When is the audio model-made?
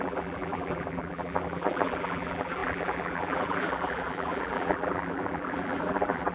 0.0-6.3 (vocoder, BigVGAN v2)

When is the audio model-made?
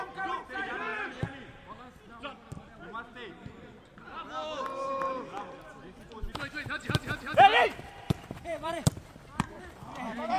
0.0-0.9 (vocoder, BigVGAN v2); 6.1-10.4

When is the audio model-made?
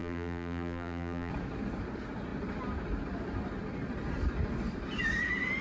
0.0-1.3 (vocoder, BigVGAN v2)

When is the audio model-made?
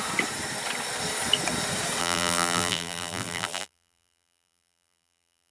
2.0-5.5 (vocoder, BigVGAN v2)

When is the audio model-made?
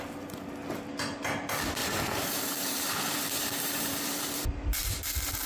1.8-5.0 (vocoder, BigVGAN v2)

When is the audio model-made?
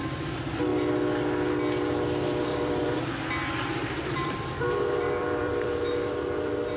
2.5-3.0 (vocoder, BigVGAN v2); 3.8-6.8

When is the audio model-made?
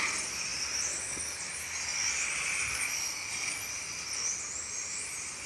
none